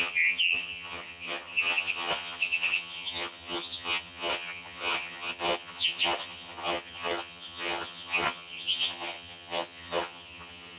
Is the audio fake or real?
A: fake